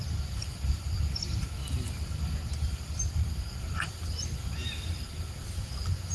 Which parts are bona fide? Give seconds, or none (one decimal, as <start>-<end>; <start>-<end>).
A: 0.0-6.1